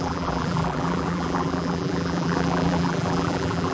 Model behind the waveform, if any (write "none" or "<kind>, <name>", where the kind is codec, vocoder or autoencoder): vocoder, BigVGAN v2